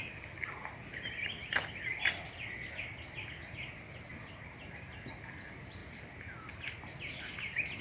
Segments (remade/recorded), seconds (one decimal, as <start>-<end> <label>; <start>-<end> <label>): 0.0-7.8 recorded